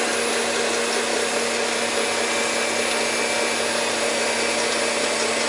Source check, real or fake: real